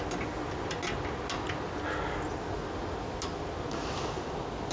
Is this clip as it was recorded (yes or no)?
yes